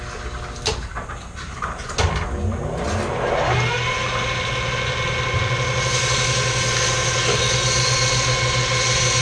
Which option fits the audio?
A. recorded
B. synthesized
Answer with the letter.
A